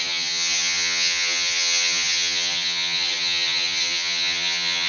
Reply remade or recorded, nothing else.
remade